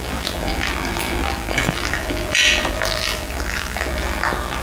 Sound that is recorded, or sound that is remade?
remade